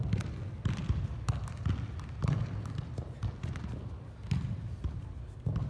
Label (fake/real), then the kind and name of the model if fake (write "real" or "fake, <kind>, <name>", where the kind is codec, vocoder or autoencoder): real